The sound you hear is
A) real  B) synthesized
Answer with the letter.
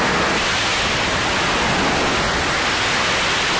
A